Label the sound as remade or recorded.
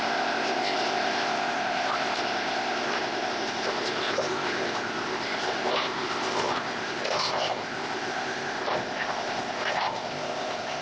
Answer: remade